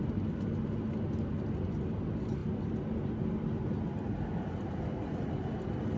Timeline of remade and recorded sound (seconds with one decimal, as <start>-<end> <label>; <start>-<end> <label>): 0.0-6.0 recorded